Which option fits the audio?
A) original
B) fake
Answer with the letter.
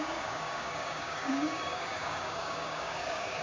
B